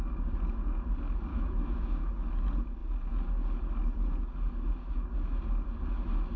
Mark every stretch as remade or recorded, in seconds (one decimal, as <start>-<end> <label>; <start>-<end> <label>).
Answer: 0.0-1.3 recorded; 1.3-2.1 remade; 2.1-6.4 recorded